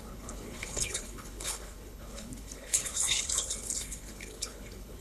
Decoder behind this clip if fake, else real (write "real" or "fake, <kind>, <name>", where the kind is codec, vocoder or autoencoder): fake, codec, HILCodec